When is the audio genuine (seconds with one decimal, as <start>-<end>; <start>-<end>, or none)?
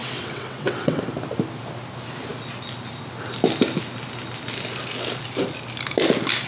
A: 1.0-6.5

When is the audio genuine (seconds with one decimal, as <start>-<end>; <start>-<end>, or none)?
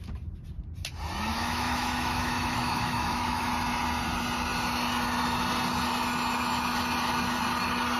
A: 0.0-1.3; 3.5-8.0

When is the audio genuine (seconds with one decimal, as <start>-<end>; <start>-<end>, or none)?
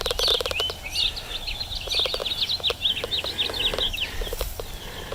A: 0.0-5.1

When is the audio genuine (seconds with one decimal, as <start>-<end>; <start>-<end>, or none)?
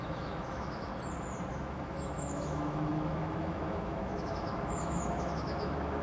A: 0.9-1.5